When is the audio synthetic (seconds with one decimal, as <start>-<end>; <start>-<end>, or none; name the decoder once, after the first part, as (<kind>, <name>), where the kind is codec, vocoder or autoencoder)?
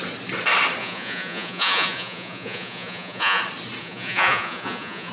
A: 0.8-3.4 (vocoder, Vocos); 3.8-5.1